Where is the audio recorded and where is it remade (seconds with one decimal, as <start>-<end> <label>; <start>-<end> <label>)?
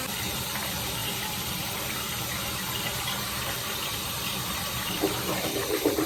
0.0-6.1 remade